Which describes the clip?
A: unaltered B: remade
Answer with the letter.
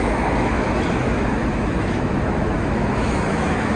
B